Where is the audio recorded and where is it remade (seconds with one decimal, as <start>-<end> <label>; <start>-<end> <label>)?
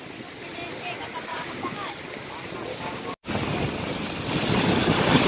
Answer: 0.0-1.3 recorded; 1.3-1.9 remade; 1.9-2.7 recorded; 2.7-3.3 remade; 3.3-5.3 recorded